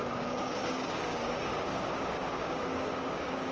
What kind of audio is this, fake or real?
fake